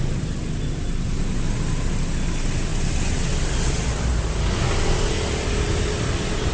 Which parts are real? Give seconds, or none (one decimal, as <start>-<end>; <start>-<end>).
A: 0.0-6.5